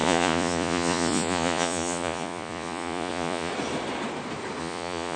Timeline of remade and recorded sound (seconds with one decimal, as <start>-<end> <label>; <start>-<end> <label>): 0.0-3.5 remade; 3.5-4.6 recorded; 4.6-5.2 remade